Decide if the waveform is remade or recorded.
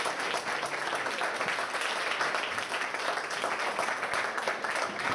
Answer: recorded